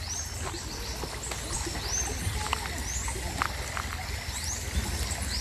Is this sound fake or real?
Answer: real